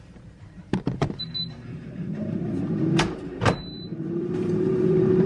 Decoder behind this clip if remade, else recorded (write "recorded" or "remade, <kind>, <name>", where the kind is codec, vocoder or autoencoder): remade, vocoder, BigVGAN v2